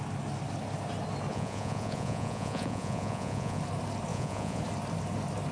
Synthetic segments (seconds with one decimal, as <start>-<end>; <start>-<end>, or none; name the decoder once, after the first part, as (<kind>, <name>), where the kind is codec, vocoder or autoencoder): 1.3-3.6 (vocoder, Vocos); 4.1-4.6